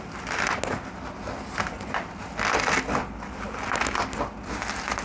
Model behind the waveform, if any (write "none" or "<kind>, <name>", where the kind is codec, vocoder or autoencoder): none